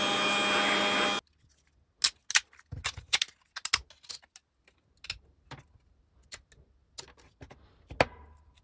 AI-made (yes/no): no